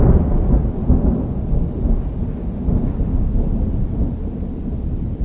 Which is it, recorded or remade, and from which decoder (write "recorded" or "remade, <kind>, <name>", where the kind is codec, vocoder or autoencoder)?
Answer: recorded